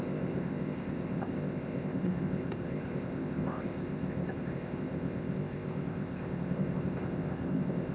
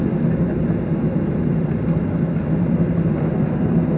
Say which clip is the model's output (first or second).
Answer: first